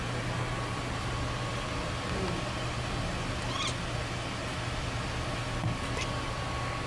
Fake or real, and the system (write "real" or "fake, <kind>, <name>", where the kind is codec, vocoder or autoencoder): real